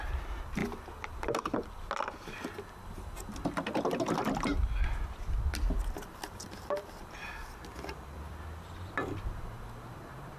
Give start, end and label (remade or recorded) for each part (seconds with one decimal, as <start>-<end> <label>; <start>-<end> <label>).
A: 0.0-0.6 remade; 0.6-4.0 recorded; 4.0-4.5 remade; 4.5-5.8 recorded; 5.8-10.4 remade